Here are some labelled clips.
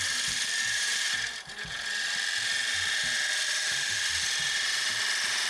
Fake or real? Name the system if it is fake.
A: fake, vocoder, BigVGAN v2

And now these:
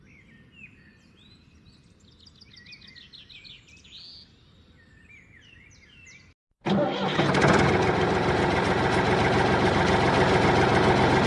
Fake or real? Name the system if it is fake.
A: real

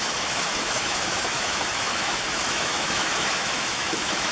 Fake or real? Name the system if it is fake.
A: fake, autoencoder, DAC-VAE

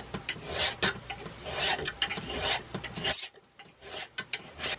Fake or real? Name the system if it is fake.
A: real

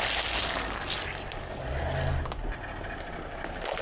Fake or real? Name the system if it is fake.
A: real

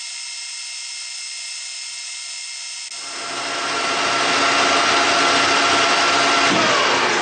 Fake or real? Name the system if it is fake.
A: real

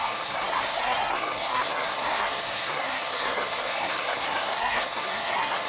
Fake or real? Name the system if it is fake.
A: fake, codec, SNAC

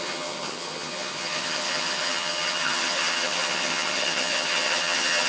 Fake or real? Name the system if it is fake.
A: fake, vocoder, HiFi-GAN